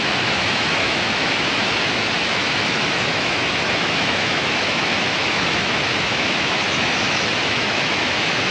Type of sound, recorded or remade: remade